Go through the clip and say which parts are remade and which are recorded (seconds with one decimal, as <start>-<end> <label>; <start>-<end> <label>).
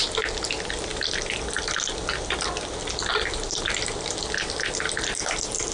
0.0-5.7 recorded